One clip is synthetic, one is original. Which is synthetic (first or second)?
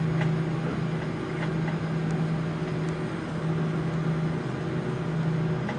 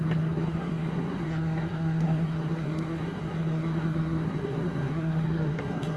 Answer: second